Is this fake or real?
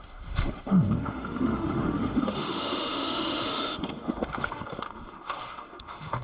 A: fake